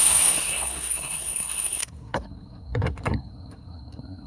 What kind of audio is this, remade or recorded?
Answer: remade